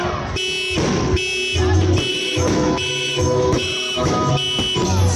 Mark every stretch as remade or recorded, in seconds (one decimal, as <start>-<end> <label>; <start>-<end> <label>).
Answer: 0.0-2.1 recorded; 2.1-4.3 remade; 4.3-5.2 recorded